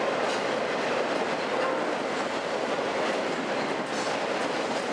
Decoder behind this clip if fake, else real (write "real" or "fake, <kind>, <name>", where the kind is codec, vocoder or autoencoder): real